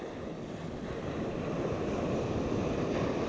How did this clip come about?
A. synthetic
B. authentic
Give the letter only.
B